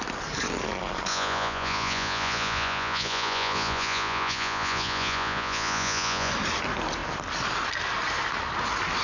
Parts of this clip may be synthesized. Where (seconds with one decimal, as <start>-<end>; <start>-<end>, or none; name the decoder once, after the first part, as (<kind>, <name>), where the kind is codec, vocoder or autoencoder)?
1.1-6.3 (vocoder, Vocos)